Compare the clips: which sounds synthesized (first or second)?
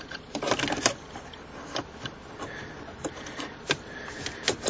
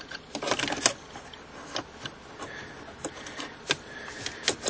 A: first